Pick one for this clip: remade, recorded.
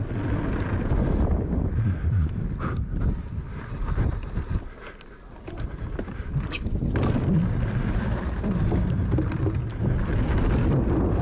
recorded